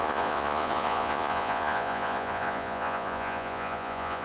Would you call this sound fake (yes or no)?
yes